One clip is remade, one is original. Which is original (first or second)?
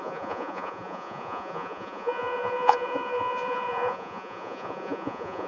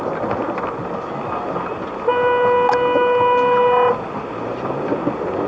second